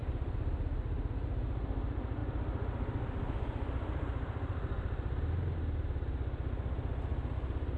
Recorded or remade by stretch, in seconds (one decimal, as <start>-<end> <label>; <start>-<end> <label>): 0.0-1.1 remade; 1.1-7.1 recorded; 7.1-7.8 remade